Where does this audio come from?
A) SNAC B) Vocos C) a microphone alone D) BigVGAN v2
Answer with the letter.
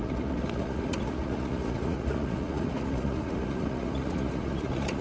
B